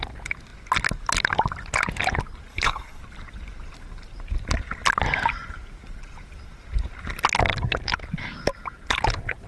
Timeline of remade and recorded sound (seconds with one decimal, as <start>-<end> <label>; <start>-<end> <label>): 0.0-2.5 recorded; 2.5-3.0 remade; 3.0-9.5 recorded

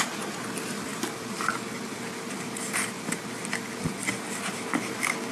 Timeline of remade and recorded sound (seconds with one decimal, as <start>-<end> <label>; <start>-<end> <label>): 0.0-5.3 recorded

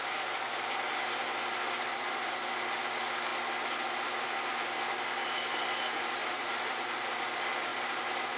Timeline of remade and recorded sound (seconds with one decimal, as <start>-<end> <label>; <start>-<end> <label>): 0.0-1.9 recorded; 1.9-2.5 remade; 2.5-6.2 recorded; 6.2-7.2 remade; 7.2-7.7 recorded; 7.7-8.4 remade

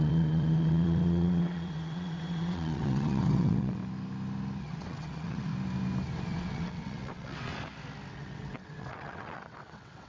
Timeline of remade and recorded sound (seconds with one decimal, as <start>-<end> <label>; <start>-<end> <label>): 0.0-3.8 remade; 3.8-4.6 recorded; 4.6-5.5 remade; 5.5-6.2 recorded; 6.2-7.5 remade; 7.5-8.1 recorded; 8.1-10.1 remade